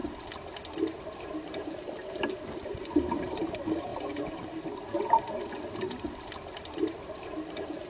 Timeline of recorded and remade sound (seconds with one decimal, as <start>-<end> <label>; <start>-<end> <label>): 0.0-1.0 recorded; 1.0-3.9 remade; 3.9-4.7 recorded; 4.7-7.9 remade